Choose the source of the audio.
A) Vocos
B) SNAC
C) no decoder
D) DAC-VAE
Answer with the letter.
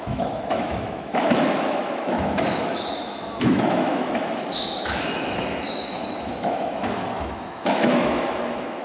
D